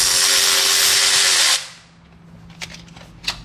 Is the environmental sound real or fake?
real